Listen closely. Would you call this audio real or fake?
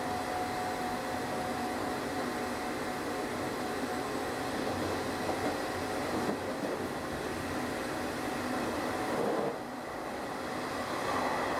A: real